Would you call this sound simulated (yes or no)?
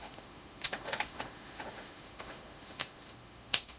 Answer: yes